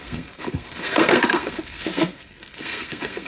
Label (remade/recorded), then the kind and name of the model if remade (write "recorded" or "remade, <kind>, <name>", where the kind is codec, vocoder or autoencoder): remade, codec, SNAC